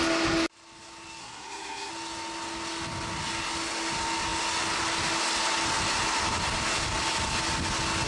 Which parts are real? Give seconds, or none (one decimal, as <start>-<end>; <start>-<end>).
0.0-1.2; 1.9-8.1